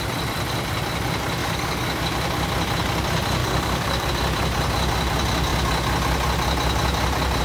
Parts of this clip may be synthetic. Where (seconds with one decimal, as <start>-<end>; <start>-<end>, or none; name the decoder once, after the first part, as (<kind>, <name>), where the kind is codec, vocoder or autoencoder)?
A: 1.4-2.0 (codec, DAC); 3.4-4.1